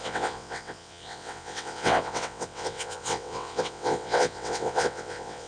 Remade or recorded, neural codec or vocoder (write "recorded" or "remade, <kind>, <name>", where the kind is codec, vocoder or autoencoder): remade, vocoder, WaveNeXt